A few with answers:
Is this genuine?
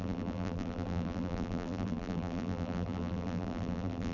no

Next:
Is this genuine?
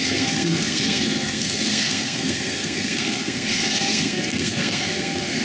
no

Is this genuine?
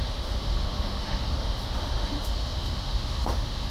no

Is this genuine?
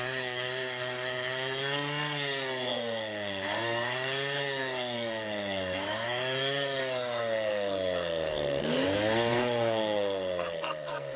no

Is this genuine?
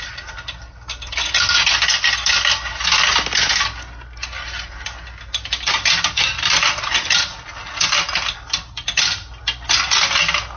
yes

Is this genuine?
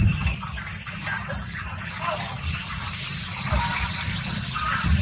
no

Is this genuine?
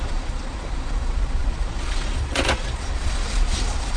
no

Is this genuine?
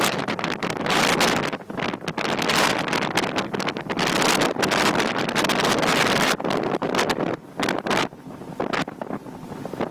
yes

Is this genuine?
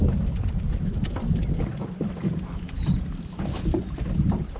yes